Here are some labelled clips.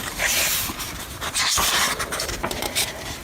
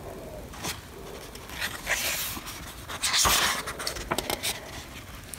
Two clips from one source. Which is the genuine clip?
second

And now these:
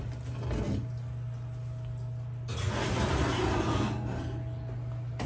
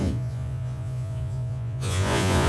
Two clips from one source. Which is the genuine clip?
first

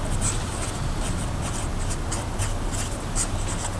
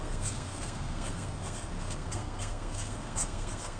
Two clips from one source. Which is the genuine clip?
first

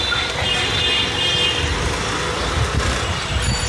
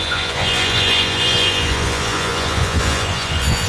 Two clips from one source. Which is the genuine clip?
first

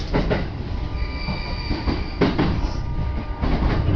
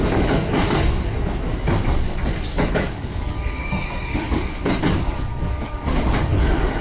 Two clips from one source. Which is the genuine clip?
first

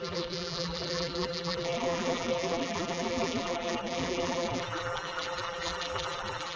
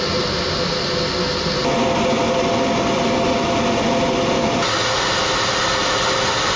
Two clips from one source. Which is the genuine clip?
second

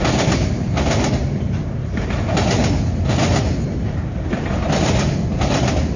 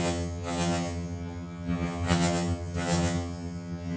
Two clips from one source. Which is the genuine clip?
first